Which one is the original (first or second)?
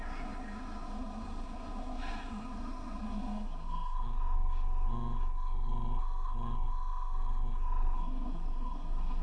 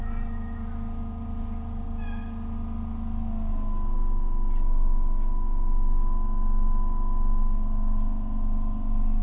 second